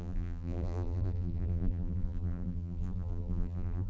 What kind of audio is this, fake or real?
fake